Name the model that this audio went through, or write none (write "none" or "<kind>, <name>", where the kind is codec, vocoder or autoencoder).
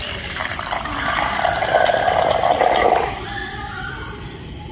vocoder, BigVGAN v2